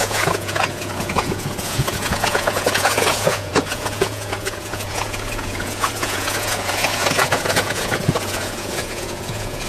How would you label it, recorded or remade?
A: remade